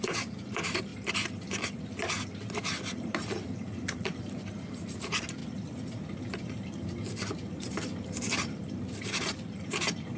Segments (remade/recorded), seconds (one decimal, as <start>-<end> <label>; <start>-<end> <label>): 0.0-0.9 remade; 0.9-2.6 recorded; 2.6-5.4 remade; 5.4-6.2 recorded; 6.2-10.2 remade